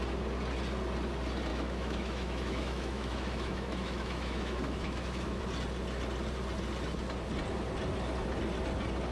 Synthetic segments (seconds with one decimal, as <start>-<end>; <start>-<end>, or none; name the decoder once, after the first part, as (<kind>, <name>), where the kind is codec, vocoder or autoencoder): 1.5-5.4 (autoencoder, DAC-VAE)